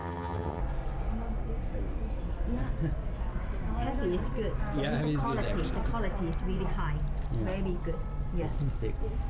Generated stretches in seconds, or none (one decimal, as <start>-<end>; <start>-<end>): 0.0-0.6